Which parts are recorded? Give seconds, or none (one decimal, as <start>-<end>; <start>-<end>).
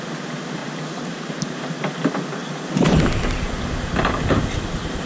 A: 0.0-0.6; 1.9-5.1